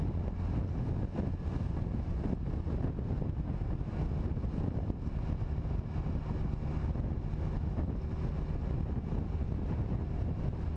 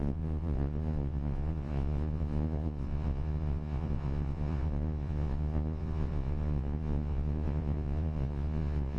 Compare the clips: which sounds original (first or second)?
first